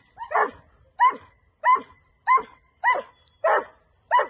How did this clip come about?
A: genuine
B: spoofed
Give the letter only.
A